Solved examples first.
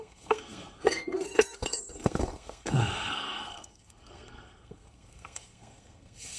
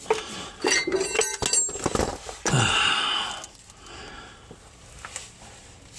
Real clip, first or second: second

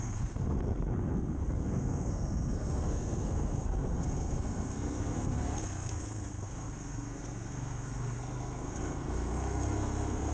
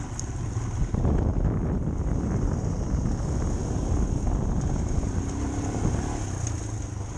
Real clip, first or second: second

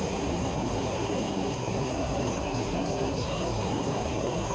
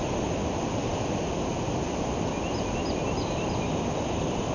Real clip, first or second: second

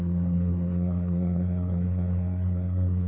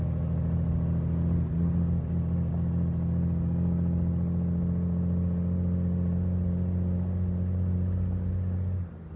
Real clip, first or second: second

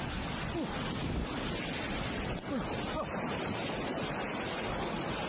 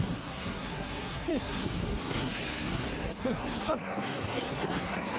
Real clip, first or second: first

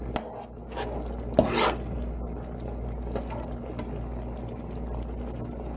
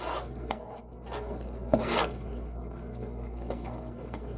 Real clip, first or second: first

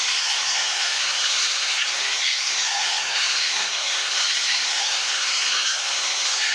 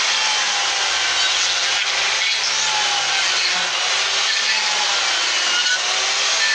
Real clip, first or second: second